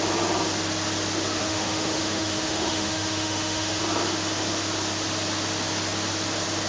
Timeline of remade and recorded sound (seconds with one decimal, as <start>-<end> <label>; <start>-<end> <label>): 0.0-1.4 recorded; 1.4-3.8 remade; 3.8-6.7 recorded